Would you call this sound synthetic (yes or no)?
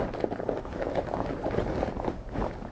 no